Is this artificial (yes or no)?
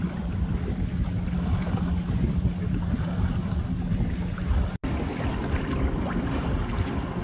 no